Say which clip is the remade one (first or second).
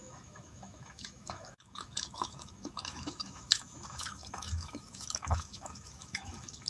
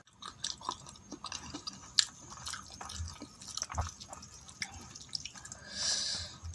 first